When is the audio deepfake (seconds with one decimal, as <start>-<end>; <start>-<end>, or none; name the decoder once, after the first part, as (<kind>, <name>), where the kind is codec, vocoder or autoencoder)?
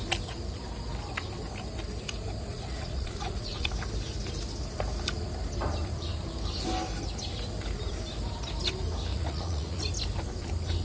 2.5-3.7 (vocoder, Vocos); 9.1-9.8